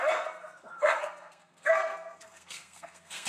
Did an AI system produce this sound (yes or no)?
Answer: yes